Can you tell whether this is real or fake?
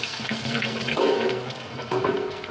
fake